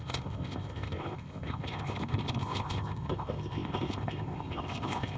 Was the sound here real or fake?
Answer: fake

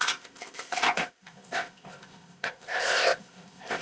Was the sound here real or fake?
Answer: fake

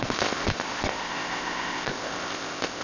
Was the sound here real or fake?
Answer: fake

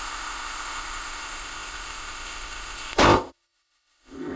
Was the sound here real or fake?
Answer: fake